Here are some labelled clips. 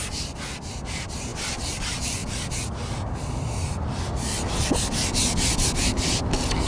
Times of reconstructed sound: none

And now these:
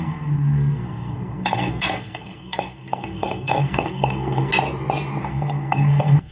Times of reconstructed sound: 0.0-4.5; 5.2-6.3

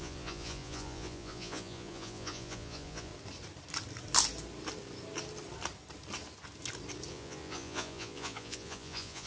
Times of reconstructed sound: 0.0-3.1; 7.1-9.3

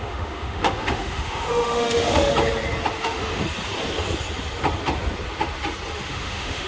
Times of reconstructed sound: 0.0-2.3; 3.0-3.4; 6.1-6.7

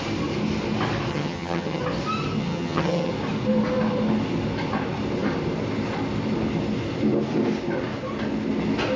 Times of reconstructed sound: 1.1-1.8; 2.4-3.1

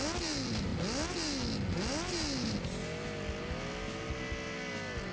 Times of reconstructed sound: none

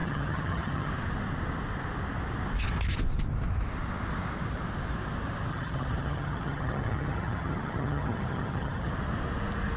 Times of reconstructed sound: 0.0-0.9; 5.5-8.9